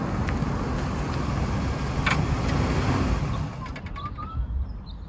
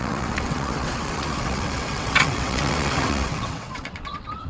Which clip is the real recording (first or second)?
first